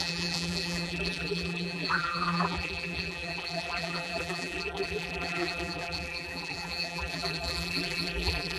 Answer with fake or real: fake